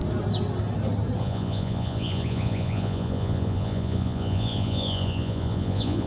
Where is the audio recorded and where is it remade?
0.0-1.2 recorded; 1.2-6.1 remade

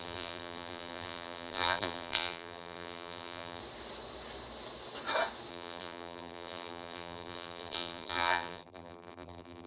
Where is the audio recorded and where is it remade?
0.0-3.6 remade; 3.6-5.5 recorded; 5.5-9.7 remade